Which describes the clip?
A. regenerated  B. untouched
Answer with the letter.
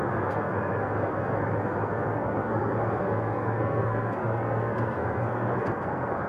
A